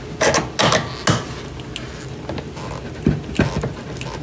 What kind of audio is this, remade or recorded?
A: recorded